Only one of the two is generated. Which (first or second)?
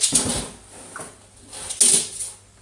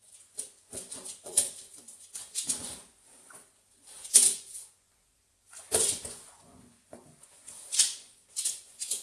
second